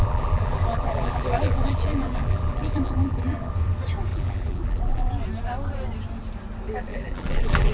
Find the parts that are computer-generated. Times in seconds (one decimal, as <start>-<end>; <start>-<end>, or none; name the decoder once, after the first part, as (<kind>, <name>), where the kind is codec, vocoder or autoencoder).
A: 0.0-3.5 (vocoder, BigVGAN v2); 4.1-5.1; 6.9-7.7